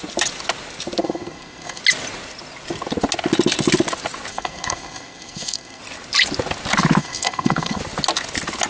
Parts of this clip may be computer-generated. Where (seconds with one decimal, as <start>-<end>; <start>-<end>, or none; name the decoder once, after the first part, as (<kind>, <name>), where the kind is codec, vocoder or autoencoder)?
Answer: 1.0-1.8 (codec, SNAC); 4.3-5.8; 7.0-7.8